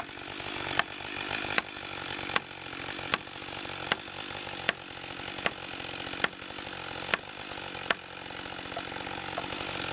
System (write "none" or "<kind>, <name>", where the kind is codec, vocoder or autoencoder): none